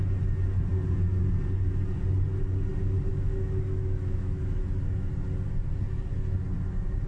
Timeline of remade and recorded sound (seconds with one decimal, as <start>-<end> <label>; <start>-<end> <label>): 0.0-3.1 recorded; 3.1-5.1 remade; 5.1-7.1 recorded

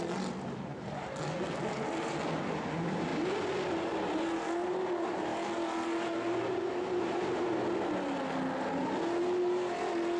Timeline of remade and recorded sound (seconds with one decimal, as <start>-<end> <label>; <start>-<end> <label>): 0.0-10.2 recorded

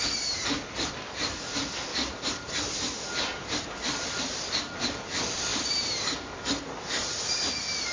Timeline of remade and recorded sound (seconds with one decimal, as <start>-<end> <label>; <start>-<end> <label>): 0.0-7.9 recorded

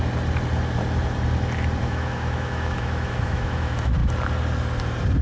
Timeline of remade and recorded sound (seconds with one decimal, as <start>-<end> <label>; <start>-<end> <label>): 0.0-1.8 recorded; 1.8-4.0 remade; 4.0-5.2 recorded

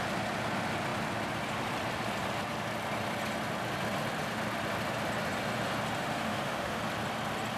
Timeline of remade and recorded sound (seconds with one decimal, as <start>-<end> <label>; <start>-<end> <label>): 0.0-6.0 recorded; 6.0-6.8 remade; 6.8-7.6 recorded

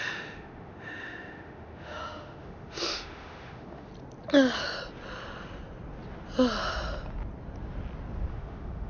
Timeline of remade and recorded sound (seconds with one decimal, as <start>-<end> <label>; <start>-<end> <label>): 0.0-3.9 remade; 3.9-8.3 recorded; 8.3-8.9 remade

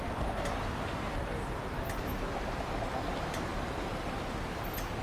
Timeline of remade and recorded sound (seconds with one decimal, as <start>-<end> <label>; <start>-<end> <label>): 0.0-5.0 recorded